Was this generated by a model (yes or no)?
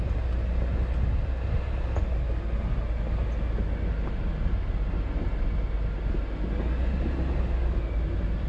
no